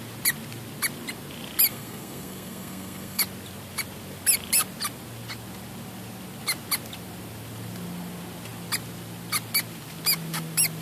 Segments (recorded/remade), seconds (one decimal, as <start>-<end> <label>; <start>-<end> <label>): 0.0-1.7 recorded; 1.7-3.2 remade; 3.2-10.8 recorded